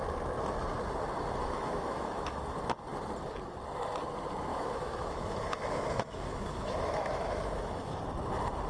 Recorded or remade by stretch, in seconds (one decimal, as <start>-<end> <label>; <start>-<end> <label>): 0.0-1.4 recorded; 1.4-2.4 remade; 2.4-4.5 recorded; 4.5-8.0 remade; 8.0-8.7 recorded